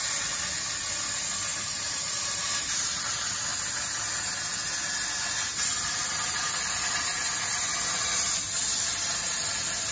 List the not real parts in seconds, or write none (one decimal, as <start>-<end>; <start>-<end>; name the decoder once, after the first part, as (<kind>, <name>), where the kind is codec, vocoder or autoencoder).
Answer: 1.5-3.0 (vocoder, BigVGAN v2)